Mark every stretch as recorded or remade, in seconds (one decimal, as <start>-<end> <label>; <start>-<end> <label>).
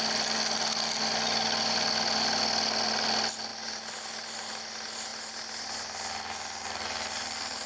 0.0-7.7 recorded